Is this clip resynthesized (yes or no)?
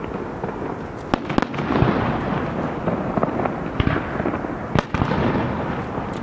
no